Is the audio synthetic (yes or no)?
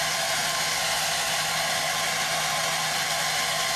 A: no